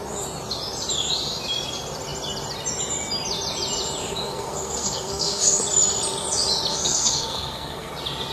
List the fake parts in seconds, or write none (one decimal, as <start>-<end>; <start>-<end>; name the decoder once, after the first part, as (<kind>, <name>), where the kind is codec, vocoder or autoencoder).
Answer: 4.0-5.6 (codec, SNAC); 6.7-7.9